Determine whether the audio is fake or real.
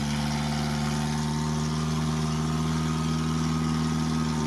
real